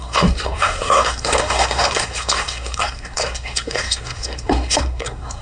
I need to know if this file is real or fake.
fake